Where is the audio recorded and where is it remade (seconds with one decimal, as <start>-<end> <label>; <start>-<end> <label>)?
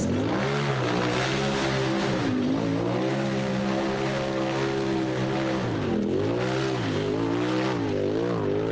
0.0-8.7 recorded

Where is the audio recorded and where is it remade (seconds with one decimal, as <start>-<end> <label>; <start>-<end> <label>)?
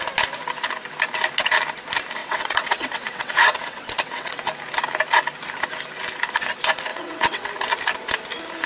0.0-2.2 recorded; 2.2-4.4 remade; 4.4-6.9 recorded; 6.9-7.5 remade; 7.5-8.7 recorded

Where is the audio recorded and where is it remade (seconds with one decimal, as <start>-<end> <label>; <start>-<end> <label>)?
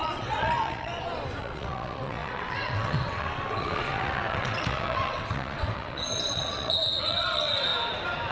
0.0-0.9 remade; 0.9-1.4 recorded; 1.4-7.7 remade; 7.7-8.3 recorded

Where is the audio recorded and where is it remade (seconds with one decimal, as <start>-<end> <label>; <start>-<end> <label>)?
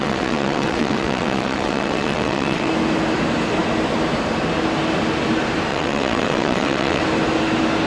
0.0-2.7 remade; 2.7-5.7 recorded; 5.7-7.0 remade; 7.0-7.9 recorded